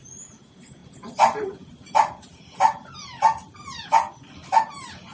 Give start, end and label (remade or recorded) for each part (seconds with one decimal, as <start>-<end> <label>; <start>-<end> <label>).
0.0-5.1 recorded